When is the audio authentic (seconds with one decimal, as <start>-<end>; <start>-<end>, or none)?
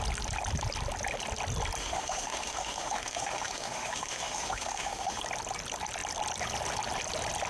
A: 0.0-1.8; 5.2-7.5